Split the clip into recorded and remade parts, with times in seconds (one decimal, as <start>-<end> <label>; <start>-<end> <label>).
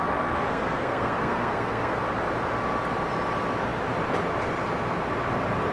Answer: 0.0-0.5 recorded; 0.5-2.0 remade; 2.0-5.7 recorded